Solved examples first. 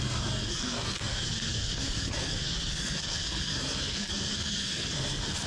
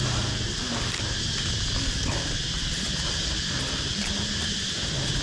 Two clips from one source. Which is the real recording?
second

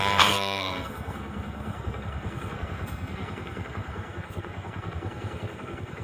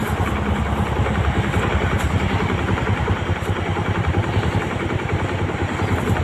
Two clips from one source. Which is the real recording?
second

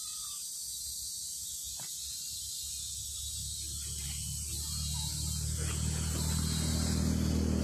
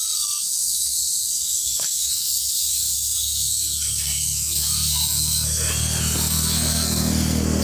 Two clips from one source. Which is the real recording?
first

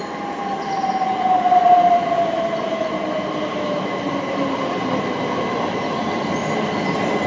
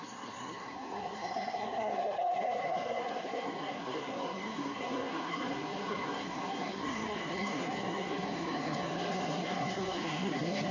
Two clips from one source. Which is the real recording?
first